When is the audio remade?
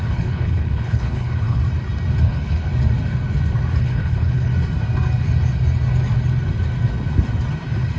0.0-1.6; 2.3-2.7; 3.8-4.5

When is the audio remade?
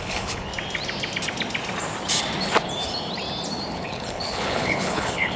0.0-0.5; 3.7-5.4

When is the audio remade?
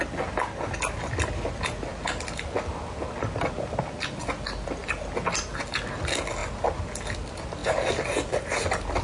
none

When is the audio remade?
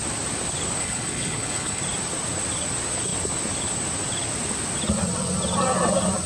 0.8-1.8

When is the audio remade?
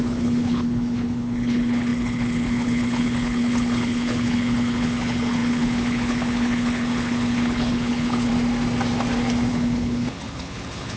0.0-8.3; 9.5-11.0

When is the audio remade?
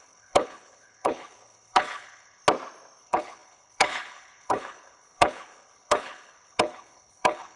0.0-2.4; 3.0-7.6